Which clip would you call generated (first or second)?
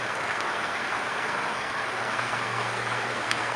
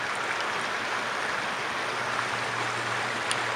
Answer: first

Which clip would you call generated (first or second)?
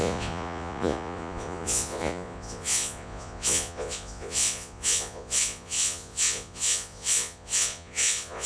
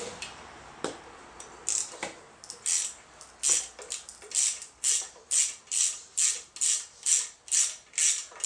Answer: first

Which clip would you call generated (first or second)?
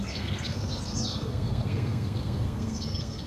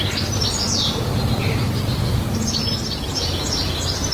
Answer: first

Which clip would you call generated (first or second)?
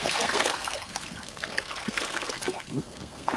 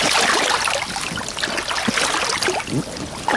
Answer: first